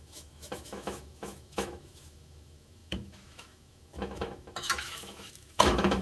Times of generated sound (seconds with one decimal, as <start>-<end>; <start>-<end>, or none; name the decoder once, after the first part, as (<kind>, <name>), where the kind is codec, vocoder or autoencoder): 0.0-6.0 (autoencoder, DAC-VAE)